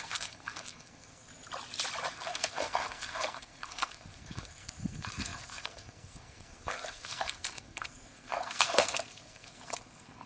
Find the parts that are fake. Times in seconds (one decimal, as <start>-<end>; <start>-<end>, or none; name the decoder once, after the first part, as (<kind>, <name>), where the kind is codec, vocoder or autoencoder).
0.0-1.3 (codec, SNAC); 2.1-10.3